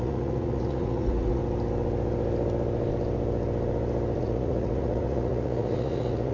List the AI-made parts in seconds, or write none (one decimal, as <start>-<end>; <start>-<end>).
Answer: 0.0-1.4; 4.2-6.3